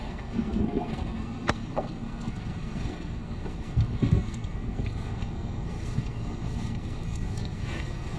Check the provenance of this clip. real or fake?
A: fake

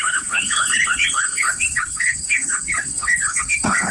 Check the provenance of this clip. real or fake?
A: fake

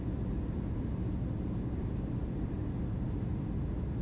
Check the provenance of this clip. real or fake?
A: real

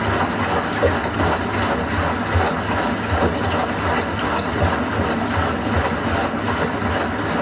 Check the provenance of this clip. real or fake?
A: real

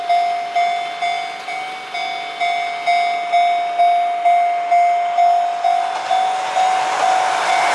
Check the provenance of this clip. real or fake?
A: real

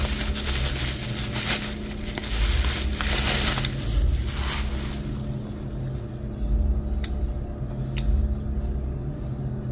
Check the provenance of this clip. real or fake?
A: real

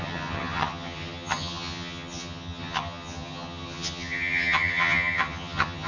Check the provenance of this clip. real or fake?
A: fake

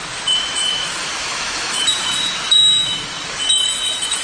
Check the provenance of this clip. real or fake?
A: fake